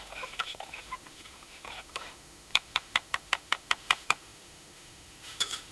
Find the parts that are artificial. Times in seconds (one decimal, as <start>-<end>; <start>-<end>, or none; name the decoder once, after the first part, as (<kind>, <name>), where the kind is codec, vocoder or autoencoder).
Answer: 0.0-5.7 (autoencoder, DAC-VAE)